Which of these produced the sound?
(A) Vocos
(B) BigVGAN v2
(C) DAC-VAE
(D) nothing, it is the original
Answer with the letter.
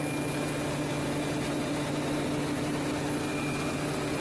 D